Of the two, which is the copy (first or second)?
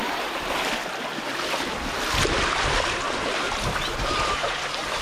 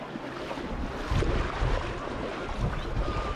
first